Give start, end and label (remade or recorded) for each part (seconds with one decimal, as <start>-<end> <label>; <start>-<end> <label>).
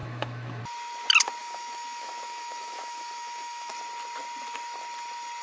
0.0-0.6 remade; 0.6-1.4 recorded; 1.4-3.7 remade; 3.7-5.4 recorded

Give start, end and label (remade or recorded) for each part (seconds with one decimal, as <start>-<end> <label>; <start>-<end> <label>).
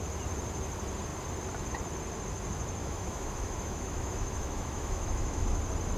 0.0-2.8 recorded; 2.8-5.6 remade; 5.6-6.0 recorded